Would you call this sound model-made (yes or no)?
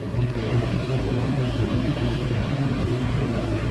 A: yes